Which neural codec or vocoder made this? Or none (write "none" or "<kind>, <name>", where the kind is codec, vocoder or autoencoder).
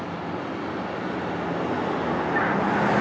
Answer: none